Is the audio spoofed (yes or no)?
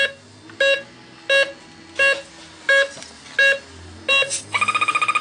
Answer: no